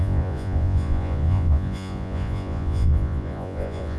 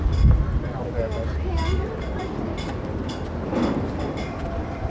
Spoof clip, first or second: first